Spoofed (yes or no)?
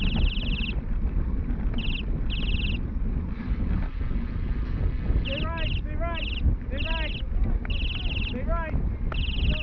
no